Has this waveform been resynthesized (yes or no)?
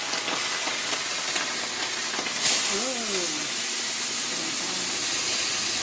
no